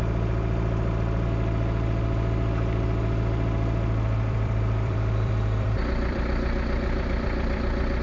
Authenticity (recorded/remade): remade